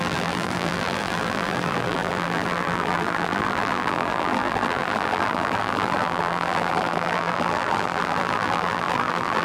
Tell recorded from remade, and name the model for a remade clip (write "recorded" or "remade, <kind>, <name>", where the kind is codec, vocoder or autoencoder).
remade, vocoder, BigVGAN v2